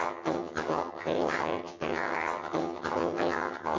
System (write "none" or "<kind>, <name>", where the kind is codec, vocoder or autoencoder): vocoder, HiFi-GAN